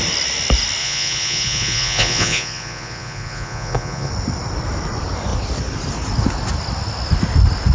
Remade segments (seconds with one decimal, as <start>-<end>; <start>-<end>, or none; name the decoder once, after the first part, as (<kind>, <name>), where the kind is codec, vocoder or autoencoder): 0.8-4.1 (vocoder, Vocos)